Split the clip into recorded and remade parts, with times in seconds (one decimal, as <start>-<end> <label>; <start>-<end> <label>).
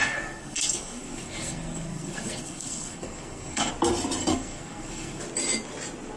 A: 0.0-3.7 remade; 3.7-4.2 recorded; 4.2-5.2 remade; 5.2-6.2 recorded